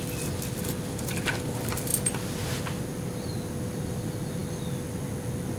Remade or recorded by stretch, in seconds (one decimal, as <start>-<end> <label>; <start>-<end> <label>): 0.0-5.6 recorded